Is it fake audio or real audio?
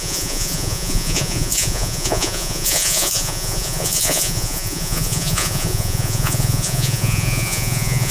fake